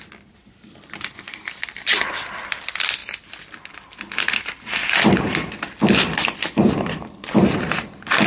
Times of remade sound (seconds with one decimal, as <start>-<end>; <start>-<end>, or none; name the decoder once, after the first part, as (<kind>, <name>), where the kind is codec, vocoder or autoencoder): 0.0-8.3 (vocoder, BigVGAN v2)